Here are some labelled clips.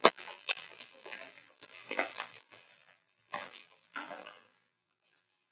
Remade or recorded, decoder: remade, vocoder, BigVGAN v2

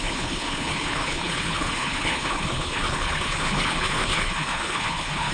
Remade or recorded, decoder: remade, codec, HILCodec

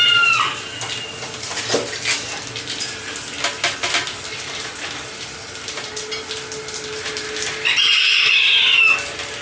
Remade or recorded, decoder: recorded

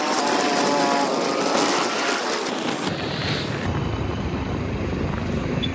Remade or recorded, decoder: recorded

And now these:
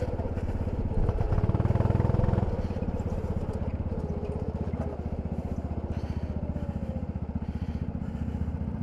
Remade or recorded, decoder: recorded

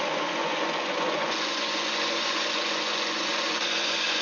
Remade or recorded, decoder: remade, vocoder, Vocos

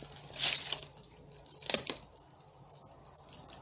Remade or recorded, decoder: recorded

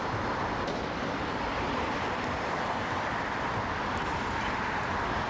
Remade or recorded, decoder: remade, vocoder, BigVGAN v2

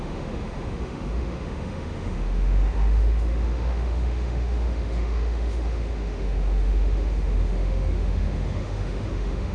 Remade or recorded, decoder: remade, autoencoder, DAC-VAE